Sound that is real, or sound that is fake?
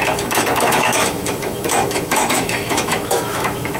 fake